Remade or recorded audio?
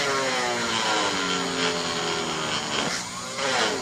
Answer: recorded